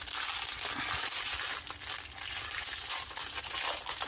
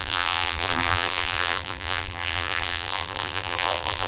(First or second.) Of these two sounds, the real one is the first